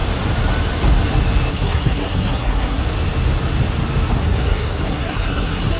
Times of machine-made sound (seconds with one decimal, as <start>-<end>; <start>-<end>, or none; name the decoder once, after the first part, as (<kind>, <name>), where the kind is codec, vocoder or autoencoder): 1.5-2.8 (codec, SNAC); 4.2-5.8

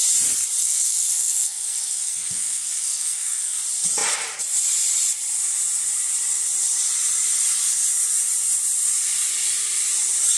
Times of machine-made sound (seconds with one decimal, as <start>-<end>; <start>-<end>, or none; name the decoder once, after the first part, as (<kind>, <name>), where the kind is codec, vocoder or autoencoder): 0.6-3.6 (codec, SNAC)

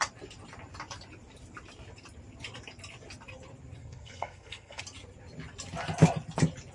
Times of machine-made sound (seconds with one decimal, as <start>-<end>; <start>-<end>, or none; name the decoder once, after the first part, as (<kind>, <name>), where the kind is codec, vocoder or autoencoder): 3.8-4.8 (codec, SNAC)

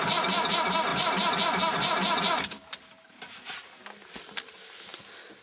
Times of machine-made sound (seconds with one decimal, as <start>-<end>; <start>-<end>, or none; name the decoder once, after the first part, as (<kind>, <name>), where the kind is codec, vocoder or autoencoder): none

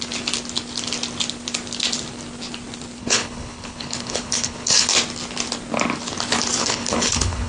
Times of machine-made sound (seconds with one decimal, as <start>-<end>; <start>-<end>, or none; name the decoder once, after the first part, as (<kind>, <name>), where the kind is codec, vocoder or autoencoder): 3.0-4.9 (codec, HILCodec); 6.6-7.5